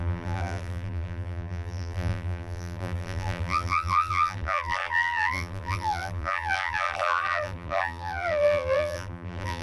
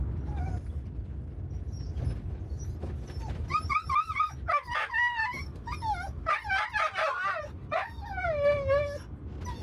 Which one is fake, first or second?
first